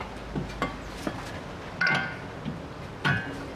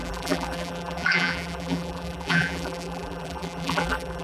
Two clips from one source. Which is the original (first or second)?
first